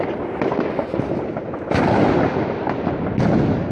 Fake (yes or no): no